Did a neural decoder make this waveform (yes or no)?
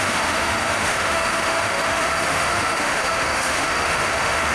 yes